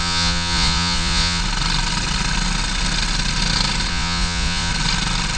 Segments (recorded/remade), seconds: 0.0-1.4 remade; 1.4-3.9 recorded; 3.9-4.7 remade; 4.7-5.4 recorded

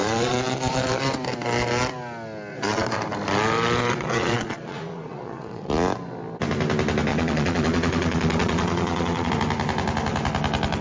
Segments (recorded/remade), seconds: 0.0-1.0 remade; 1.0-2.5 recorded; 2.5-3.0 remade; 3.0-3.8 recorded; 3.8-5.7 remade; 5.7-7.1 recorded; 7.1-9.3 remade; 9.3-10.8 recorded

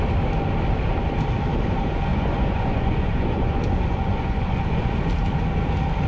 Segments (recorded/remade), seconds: 0.0-2.1 recorded; 2.1-4.9 remade; 4.9-6.1 recorded

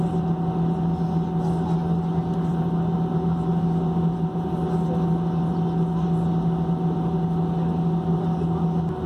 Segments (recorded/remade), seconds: 0.0-9.1 recorded

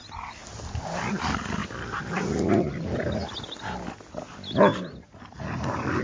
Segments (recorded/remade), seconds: 0.0-6.0 recorded

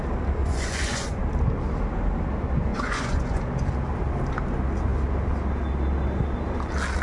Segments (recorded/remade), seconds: 0.0-0.4 recorded; 0.4-1.2 remade; 1.2-2.7 recorded; 2.7-3.4 remade; 3.4-7.0 recorded

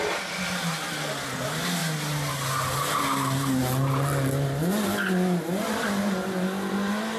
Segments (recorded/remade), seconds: 0.0-7.2 recorded